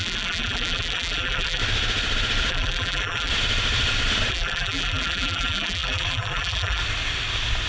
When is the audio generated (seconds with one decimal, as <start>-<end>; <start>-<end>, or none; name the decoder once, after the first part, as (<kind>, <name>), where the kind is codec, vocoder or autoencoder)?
0.0-1.6 (vocoder, BigVGAN v2); 2.5-3.3; 4.3-6.8